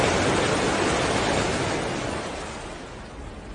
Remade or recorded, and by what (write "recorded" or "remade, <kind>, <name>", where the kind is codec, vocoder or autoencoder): recorded